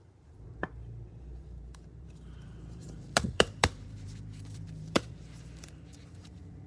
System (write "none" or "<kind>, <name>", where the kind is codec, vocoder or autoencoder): vocoder, BigVGAN v2